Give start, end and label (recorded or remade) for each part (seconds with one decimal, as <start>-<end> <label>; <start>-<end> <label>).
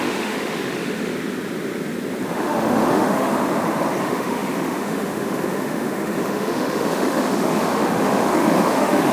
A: 0.0-1.1 remade; 1.1-2.3 recorded; 2.3-3.3 remade; 3.3-4.0 recorded; 4.0-9.1 remade